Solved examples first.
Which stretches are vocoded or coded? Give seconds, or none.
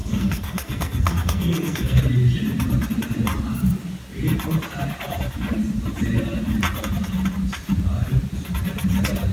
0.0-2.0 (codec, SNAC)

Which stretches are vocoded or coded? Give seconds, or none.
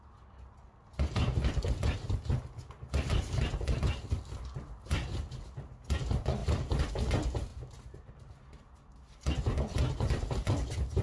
none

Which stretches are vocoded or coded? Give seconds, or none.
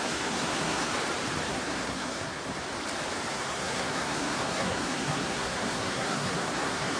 0.0-0.9 (codec, SNAC); 1.5-2.4; 3.3-7.0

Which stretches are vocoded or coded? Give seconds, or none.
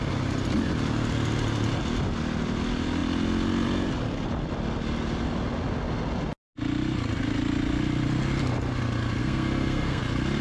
9.2-10.0 (codec, SNAC)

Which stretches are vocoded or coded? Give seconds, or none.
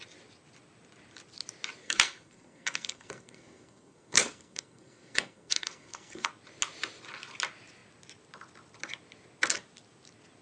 1.8-6.3 (codec, SNAC)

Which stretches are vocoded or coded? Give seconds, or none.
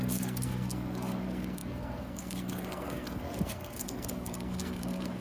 0.0-5.2 (codec, SNAC)